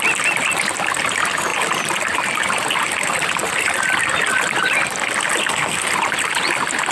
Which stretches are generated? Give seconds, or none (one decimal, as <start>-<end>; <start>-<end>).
5.4-5.9